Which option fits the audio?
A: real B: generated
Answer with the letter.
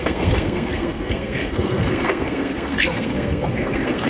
B